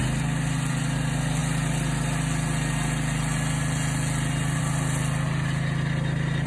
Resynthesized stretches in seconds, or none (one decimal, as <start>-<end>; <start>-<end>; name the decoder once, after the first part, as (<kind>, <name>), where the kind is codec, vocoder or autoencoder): none